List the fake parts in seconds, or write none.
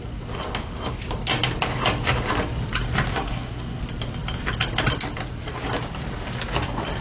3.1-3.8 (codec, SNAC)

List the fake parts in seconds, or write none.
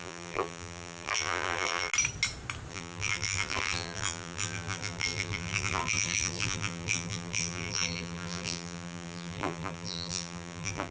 0.0-1.9 (vocoder, BigVGAN v2); 2.7-10.9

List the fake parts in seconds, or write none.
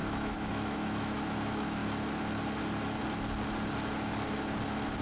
0.0-1.8 (autoencoder, DAC-VAE)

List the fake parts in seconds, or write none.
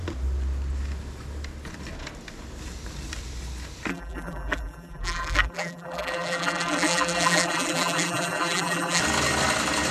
3.9-9.0 (vocoder, BigVGAN v2)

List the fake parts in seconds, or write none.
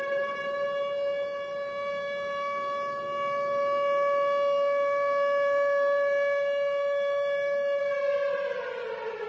none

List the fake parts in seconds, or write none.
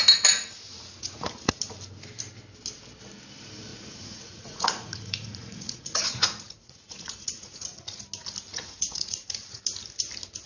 0.7-1.6 (vocoder, Vocos); 3.7-8.0; 8.5-9.6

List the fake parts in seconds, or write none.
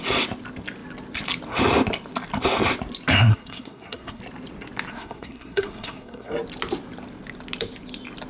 3.3-4.2 (codec, SNAC); 4.9-6.3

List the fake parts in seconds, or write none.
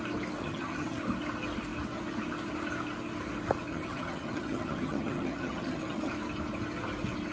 0.4-1.0 (vocoder, HiFi-GAN); 3.7-6.1